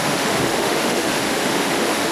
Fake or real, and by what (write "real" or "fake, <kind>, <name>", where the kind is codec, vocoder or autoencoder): fake, autoencoder, DAC-VAE